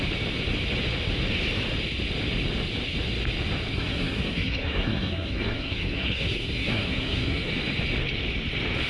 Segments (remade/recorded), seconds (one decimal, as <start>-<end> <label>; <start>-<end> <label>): 0.0-3.7 recorded; 3.7-7.5 remade; 7.5-8.9 recorded